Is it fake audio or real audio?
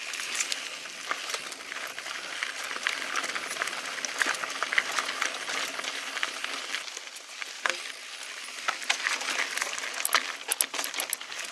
real